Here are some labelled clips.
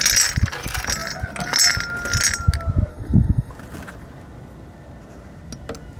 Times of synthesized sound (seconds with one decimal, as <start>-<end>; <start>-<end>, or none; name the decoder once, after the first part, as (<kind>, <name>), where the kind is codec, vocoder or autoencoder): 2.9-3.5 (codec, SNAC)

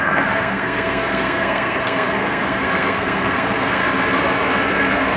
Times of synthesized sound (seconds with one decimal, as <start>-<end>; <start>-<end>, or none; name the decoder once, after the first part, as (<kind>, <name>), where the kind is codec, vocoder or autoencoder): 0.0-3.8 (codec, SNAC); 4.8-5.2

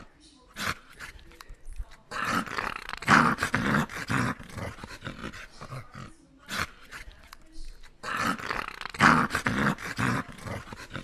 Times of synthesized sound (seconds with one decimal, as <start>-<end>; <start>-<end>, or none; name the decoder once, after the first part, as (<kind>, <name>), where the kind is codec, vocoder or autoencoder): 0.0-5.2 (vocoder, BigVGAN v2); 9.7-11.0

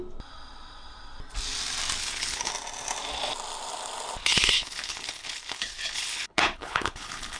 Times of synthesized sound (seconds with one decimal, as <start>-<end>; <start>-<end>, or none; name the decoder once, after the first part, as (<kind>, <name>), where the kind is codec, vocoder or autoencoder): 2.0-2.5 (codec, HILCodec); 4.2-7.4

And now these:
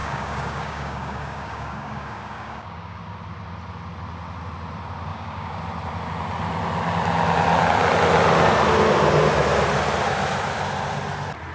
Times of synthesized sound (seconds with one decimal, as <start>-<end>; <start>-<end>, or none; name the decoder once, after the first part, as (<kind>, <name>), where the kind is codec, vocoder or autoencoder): 0.0-3.0 (codec, DAC); 5.1-5.6

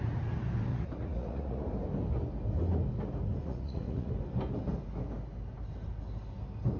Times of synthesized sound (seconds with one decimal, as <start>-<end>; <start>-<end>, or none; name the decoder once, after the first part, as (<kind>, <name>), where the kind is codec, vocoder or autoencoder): 0.7-1.6 (vocoder, Vocos); 3.4-4.1